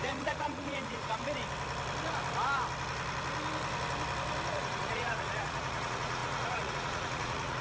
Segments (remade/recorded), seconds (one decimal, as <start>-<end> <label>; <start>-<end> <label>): 0.0-1.2 remade; 1.2-4.5 recorded; 4.5-7.6 remade